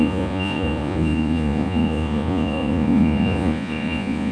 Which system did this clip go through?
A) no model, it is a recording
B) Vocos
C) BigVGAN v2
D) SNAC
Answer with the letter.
B